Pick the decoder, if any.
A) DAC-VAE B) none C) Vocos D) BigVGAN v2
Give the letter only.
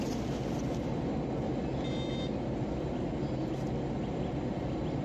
B